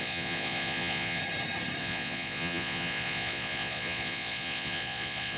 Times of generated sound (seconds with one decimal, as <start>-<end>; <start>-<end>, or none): 0.0-1.2; 1.8-5.4